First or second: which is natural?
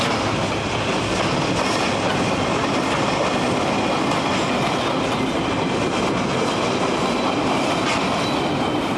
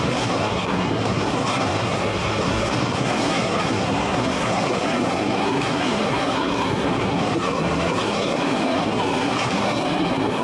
first